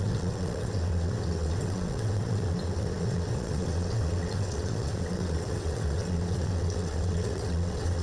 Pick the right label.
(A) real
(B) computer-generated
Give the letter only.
B